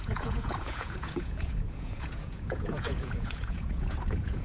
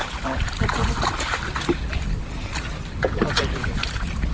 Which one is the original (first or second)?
second